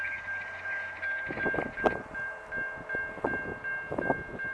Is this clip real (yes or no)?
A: yes